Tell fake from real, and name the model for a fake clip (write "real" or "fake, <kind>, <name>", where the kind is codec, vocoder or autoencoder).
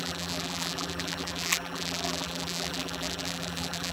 fake, vocoder, BigVGAN v2